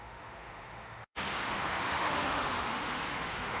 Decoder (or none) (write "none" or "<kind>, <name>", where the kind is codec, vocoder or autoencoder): autoencoder, DAC-VAE